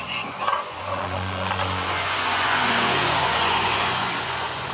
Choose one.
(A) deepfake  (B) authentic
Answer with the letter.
A